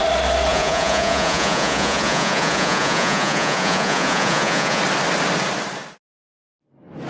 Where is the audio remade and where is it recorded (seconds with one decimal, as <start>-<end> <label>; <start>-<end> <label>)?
0.0-0.5 recorded; 0.5-4.8 remade; 4.8-7.1 recorded